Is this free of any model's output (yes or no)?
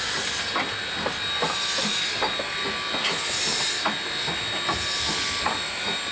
yes